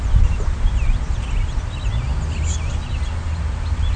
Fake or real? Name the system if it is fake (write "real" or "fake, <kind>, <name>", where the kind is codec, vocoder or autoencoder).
real